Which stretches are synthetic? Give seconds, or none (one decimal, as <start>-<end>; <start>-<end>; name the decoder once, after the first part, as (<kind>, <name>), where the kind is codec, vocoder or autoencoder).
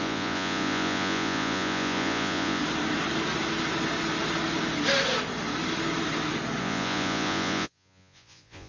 0.0-2.6 (vocoder, Vocos); 6.6-8.7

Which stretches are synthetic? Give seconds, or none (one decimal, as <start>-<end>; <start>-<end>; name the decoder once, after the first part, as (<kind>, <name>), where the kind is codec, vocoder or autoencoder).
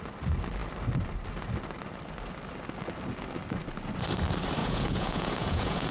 4.6-5.9 (vocoder, Vocos)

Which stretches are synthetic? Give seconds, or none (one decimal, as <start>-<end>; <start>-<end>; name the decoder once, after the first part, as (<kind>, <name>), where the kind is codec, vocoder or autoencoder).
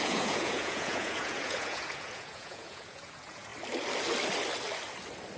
0.0-3.5 (vocoder, Vocos)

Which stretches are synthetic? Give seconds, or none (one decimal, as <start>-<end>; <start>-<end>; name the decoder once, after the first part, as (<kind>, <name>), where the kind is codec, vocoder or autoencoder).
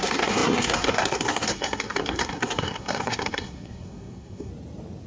0.0-4.5 (codec, SNAC)